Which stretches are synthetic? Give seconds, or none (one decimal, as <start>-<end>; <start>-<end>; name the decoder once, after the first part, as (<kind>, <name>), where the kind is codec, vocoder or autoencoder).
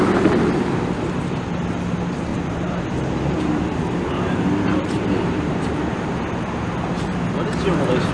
2.3-6.2 (vocoder, BigVGAN v2)